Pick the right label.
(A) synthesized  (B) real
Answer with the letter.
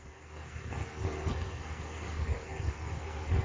A